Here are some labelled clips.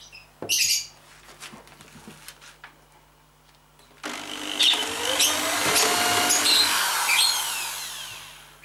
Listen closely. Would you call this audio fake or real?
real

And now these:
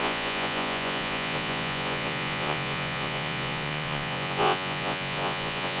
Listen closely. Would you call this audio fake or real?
fake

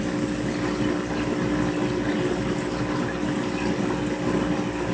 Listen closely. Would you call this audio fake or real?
real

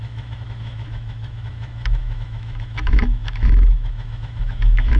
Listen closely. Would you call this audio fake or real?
fake